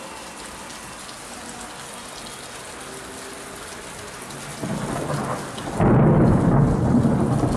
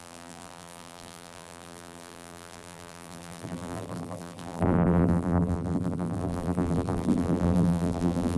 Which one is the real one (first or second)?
first